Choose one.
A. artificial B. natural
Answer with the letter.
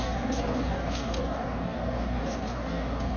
A